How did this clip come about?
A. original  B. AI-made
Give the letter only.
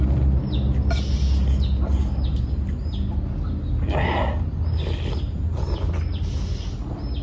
A